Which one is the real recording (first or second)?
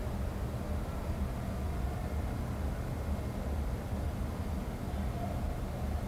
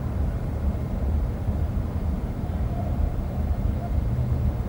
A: first